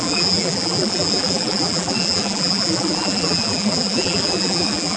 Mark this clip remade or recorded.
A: remade